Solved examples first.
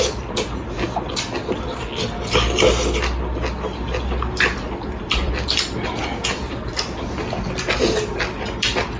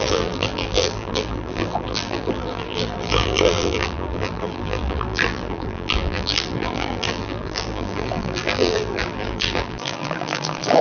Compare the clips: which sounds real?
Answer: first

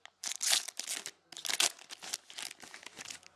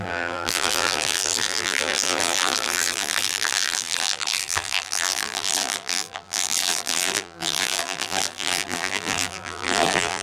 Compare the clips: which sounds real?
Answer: first